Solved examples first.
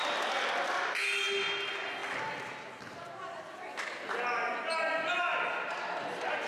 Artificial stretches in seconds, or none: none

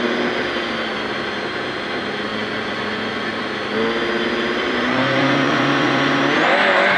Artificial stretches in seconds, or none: 2.3-3.4 (vocoder, Vocos); 4.6-6.2

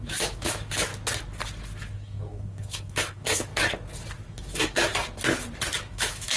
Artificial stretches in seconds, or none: 0.0-0.9 (autoencoder, DAC-VAE); 1.9-3.5; 4.3-4.9; 5.8-6.4

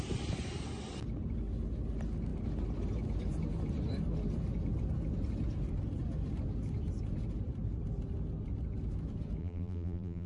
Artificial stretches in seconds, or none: 9.4-10.3 (vocoder, BigVGAN v2)

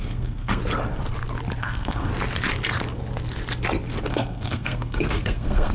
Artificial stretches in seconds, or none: 0.0-0.6 (codec, SNAC); 1.6-2.1; 4.1-5.7

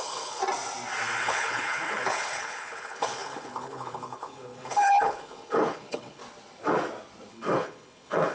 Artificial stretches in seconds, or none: 0.0-0.4 (codec, HILCodec); 1.2-6.2; 7.3-8.3